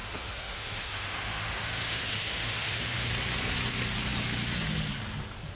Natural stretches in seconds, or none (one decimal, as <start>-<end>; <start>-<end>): 3.1-5.5